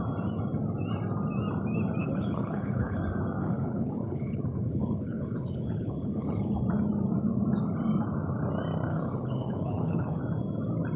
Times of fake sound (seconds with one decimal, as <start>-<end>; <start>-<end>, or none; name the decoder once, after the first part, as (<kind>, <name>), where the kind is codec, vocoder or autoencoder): 2.0-3.0 (codec, HILCodec); 3.4-6.6; 8.9-10.2